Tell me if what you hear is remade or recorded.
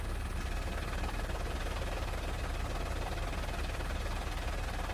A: recorded